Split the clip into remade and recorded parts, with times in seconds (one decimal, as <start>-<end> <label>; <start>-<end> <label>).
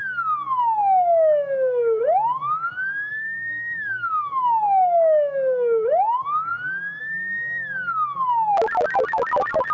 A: 0.0-3.1 recorded; 3.1-4.5 remade; 4.5-9.7 recorded